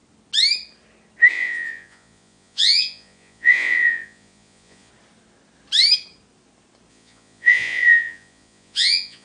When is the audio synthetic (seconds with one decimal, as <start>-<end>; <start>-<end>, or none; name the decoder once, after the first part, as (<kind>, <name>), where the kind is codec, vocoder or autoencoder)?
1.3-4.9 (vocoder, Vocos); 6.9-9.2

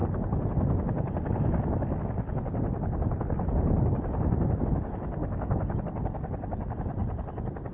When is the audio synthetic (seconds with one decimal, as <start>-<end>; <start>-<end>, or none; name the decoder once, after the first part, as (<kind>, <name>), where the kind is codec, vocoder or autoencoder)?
none

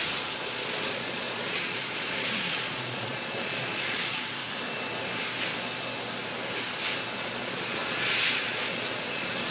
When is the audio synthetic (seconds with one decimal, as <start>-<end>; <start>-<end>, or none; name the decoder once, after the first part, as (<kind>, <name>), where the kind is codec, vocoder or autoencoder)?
0.0-4.4 (vocoder, Vocos); 7.2-9.5